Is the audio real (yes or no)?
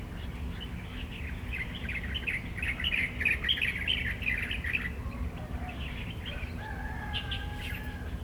yes